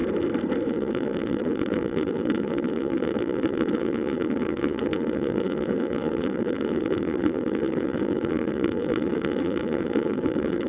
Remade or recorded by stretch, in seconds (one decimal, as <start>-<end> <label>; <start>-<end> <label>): 0.0-0.7 recorded; 0.7-10.7 remade